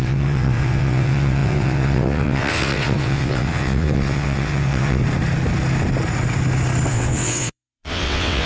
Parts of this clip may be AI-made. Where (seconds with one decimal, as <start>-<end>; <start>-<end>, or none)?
0.0-5.0; 6.9-8.5